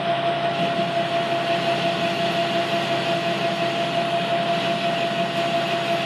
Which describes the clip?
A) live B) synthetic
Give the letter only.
A